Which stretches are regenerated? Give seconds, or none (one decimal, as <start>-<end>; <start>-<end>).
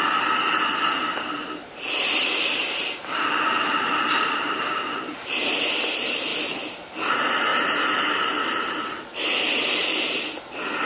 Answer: 1.6-5.6; 7.5-10.3